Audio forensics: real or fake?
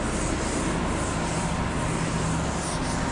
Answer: real